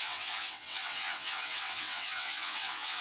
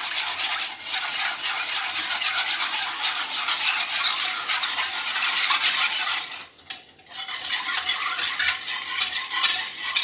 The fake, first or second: first